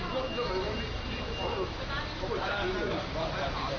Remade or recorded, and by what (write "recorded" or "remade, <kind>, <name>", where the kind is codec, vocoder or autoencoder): recorded